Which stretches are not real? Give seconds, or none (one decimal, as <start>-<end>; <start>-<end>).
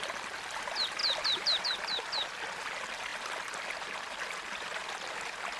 1.0-1.6